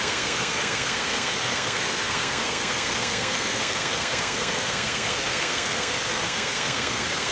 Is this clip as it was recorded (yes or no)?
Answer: no